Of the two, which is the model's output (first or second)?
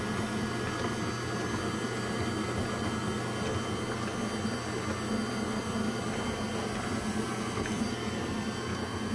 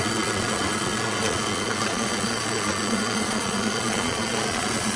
second